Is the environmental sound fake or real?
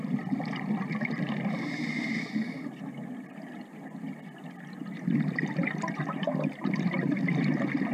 real